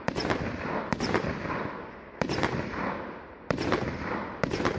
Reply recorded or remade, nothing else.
recorded